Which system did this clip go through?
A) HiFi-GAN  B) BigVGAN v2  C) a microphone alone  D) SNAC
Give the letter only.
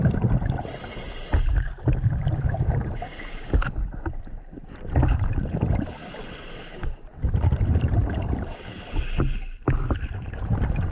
C